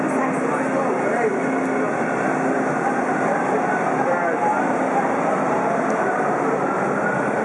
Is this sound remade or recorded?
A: recorded